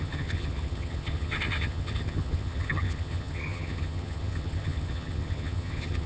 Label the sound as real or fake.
fake